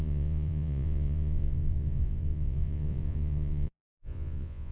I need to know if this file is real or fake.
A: fake